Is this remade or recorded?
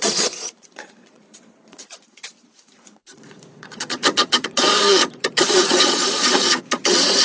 remade